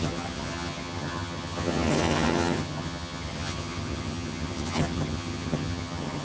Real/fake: fake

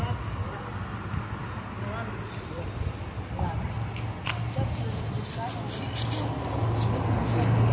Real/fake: real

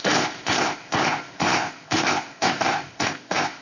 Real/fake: fake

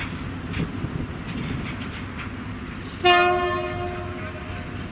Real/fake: real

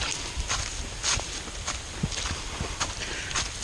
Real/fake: real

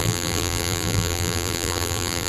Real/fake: fake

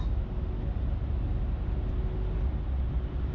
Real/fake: real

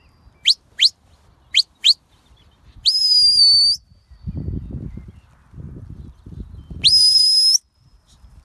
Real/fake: real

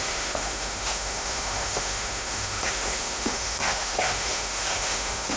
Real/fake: fake